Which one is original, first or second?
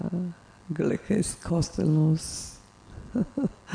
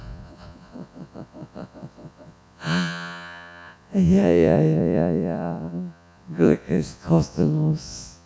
first